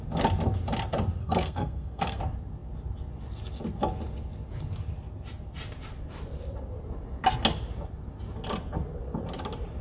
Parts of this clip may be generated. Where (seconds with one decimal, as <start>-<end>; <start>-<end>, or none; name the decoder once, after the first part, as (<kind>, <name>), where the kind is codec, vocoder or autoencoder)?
1.2-2.2 (codec, SNAC)